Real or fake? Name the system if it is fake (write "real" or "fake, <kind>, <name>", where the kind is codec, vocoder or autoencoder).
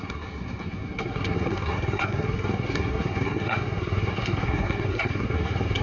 fake, codec, SNAC